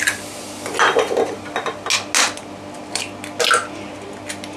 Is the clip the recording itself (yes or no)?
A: yes